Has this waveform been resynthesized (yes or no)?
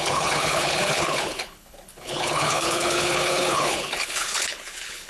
yes